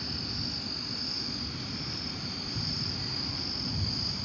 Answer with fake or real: real